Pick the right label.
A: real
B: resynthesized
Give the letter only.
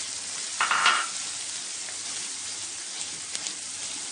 A